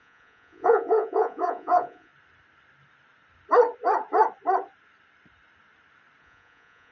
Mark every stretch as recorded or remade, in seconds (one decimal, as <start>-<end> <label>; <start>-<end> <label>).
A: 0.0-2.1 remade; 2.1-6.2 recorded; 6.2-6.9 remade